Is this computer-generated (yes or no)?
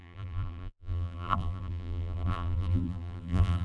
yes